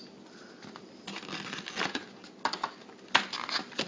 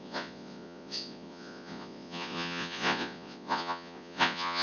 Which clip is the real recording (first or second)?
first